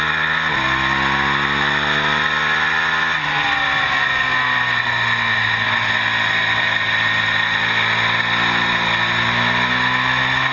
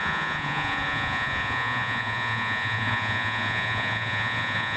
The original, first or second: first